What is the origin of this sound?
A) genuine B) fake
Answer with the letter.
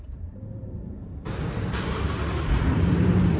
B